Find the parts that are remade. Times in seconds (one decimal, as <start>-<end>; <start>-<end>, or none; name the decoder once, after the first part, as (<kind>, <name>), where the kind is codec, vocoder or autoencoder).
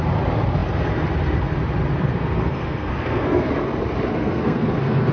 2.0-3.5 (codec, SNAC); 4.1-5.1